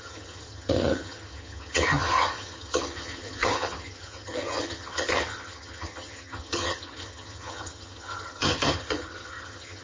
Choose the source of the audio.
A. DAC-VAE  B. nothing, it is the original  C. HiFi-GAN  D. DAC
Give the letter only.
C